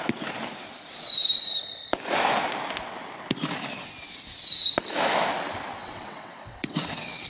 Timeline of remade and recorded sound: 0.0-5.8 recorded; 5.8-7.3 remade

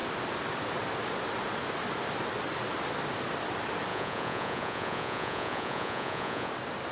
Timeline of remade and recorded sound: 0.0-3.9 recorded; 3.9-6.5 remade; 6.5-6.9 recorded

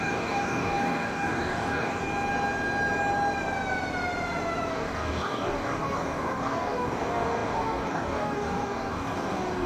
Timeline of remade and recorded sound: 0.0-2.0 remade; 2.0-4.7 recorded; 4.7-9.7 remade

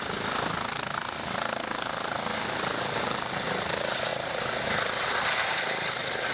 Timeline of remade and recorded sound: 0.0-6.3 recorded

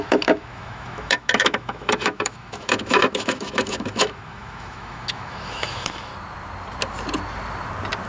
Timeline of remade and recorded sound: 0.0-6.1 remade; 6.1-8.1 recorded

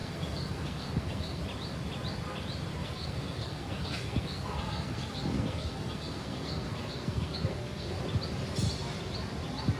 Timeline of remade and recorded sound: 0.0-1.4 remade; 1.4-2.8 recorded; 2.8-8.0 remade; 8.0-9.8 recorded